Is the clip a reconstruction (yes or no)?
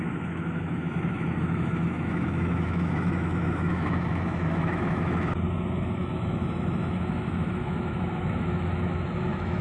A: yes